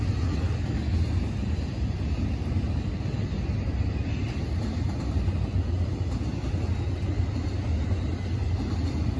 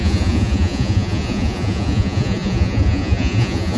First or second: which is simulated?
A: second